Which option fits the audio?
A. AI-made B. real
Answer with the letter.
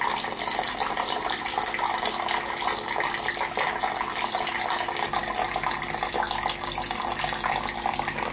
B